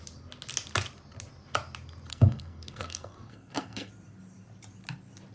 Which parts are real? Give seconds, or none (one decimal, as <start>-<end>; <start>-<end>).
0.0-2.1; 3.9-5.3

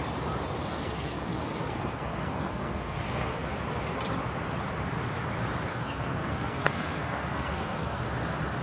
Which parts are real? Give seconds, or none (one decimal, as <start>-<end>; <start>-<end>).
0.0-0.7; 3.5-5.7; 8.0-8.6

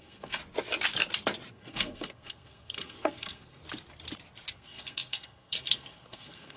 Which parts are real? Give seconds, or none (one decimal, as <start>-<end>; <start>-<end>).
0.4-1.5; 3.6-4.5

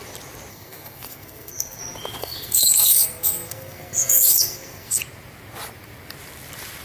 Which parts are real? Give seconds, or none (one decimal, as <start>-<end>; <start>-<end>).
0.0-0.5; 1.8-2.2; 5.0-6.8